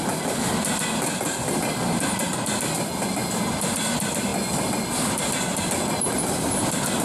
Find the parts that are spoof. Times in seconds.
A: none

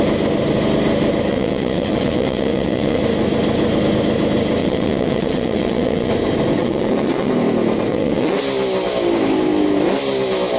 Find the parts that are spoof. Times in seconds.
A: 1.3-3.0 (vocoder, WaveNeXt); 4.6-6.1; 6.6-7.3; 7.9-8.4

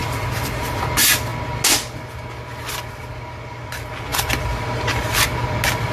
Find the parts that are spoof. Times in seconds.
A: 0.0-0.8 (vocoder, BigVGAN v2); 4.1-4.9

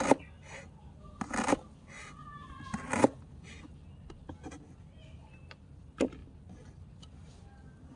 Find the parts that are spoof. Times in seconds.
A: none

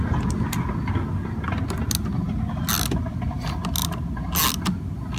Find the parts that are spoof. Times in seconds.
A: none